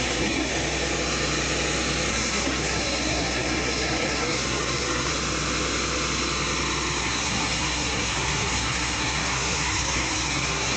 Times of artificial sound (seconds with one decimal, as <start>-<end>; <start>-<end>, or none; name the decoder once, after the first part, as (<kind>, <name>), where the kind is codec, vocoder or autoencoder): 0.0-0.5 (codec, SNAC); 2.1-5.1; 7.0-10.8